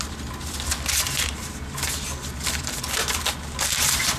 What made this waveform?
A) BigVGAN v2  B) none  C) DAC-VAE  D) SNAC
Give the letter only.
B